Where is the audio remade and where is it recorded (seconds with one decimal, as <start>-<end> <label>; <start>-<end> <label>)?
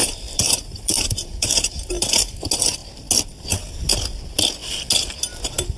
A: 0.0-2.3 remade; 2.3-5.8 recorded